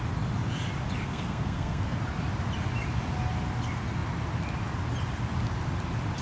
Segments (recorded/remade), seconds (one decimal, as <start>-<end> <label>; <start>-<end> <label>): 0.0-1.0 recorded; 1.0-2.0 remade; 2.0-6.2 recorded